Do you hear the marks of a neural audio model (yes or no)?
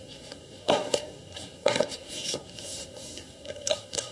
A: yes